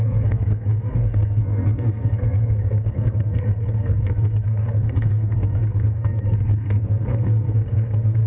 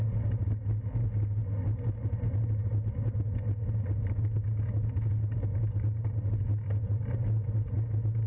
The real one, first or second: second